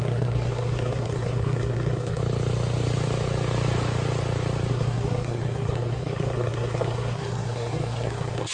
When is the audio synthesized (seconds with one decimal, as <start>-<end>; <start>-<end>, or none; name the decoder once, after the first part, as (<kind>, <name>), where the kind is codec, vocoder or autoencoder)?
0.0-2.2 (codec, SNAC); 4.7-8.5